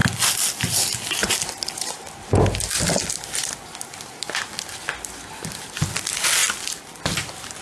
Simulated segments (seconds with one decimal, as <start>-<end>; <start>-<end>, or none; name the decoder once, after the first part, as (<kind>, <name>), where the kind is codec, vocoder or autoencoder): none